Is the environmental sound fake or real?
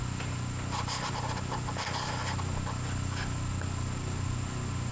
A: real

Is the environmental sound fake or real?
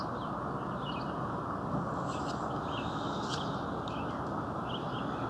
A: real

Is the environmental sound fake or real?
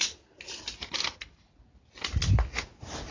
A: real